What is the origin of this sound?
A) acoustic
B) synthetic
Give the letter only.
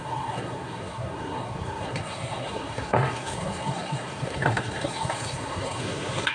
B